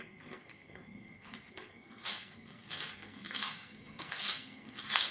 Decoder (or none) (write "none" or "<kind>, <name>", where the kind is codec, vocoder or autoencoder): codec, SNAC